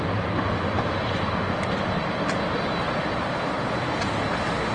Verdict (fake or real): real